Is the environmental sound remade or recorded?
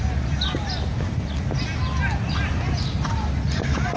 recorded